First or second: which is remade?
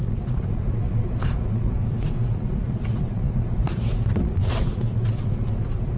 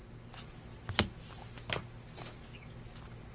first